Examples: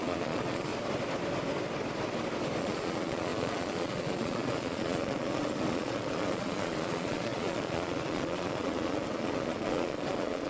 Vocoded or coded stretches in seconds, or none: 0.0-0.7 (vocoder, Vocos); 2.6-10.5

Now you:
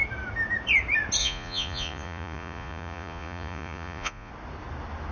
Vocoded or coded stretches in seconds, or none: 1.2-4.3 (vocoder, Vocos)

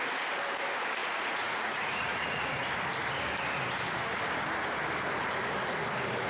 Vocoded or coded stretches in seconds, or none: 1.0-2.6 (vocoder, Vocos)

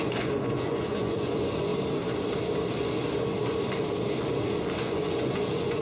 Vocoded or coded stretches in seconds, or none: 0.0-1.7 (vocoder, Vocos); 4.7-5.8

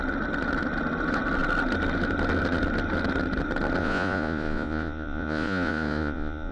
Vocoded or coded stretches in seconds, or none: 3.8-6.5 (vocoder, Vocos)

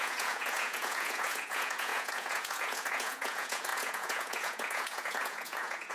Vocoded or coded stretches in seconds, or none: 0.0-5.9 (vocoder, Vocos)

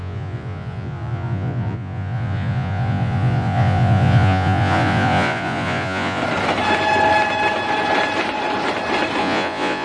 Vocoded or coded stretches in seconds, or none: 0.0-6.2 (vocoder, Vocos); 9.2-9.8

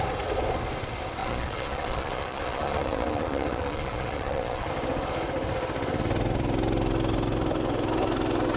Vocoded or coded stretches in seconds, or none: 1.2-4.7 (vocoder, Vocos)